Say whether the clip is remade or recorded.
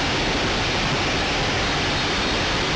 recorded